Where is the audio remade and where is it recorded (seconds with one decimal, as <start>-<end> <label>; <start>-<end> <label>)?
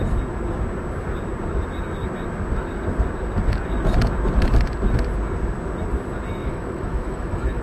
0.0-6.4 recorded; 6.4-7.6 remade